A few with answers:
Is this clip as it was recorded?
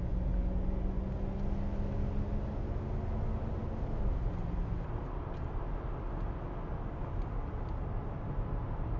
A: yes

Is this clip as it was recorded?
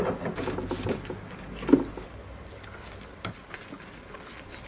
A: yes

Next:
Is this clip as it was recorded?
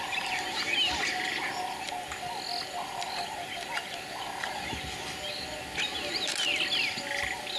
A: yes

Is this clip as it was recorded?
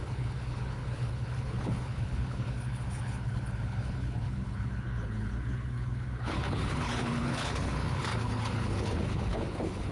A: no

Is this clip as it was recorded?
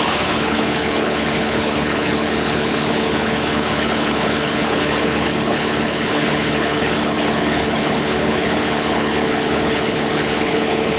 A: no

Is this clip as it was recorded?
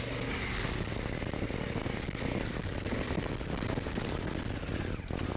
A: yes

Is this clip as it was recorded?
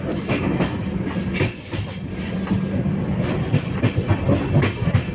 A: yes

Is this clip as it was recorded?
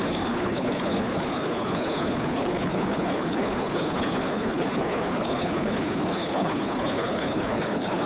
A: no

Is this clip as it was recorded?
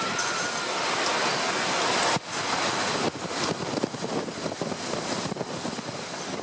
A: yes